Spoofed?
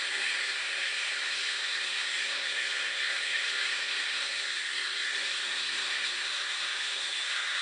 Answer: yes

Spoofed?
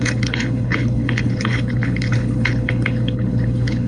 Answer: yes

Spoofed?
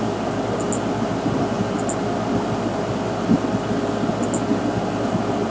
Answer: no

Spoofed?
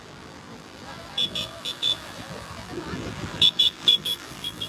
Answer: yes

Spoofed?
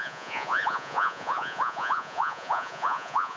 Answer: yes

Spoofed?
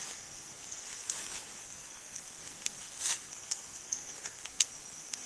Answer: yes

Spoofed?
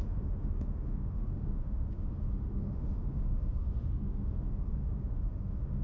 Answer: yes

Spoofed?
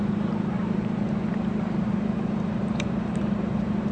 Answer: yes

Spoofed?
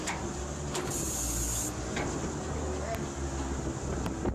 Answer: no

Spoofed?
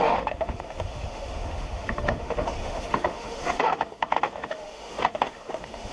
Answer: yes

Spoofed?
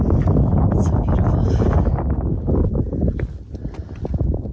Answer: no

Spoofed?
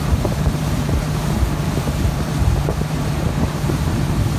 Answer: yes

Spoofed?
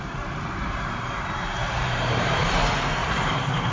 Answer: yes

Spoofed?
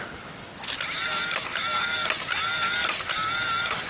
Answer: no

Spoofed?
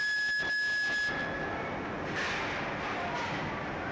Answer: no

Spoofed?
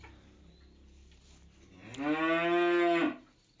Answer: no